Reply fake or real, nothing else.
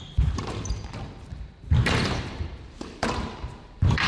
fake